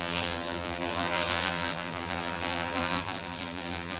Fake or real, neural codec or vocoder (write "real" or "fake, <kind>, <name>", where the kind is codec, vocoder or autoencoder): fake, vocoder, BigVGAN v2